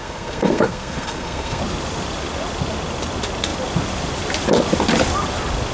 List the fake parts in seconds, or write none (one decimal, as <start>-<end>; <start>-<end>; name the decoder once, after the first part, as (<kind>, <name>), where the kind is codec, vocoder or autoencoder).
0.0-1.6 (codec, SNAC)